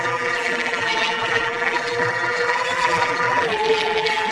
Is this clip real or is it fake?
fake